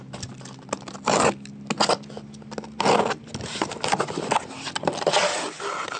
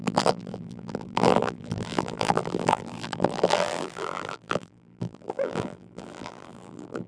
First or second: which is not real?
second